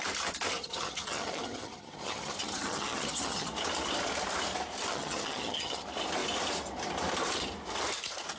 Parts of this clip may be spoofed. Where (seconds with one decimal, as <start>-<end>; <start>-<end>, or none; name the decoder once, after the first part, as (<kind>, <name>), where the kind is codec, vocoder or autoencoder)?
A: 0.6-3.5 (vocoder, HiFi-GAN); 4.9-5.8